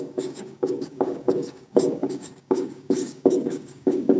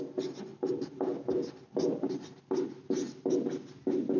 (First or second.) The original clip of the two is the second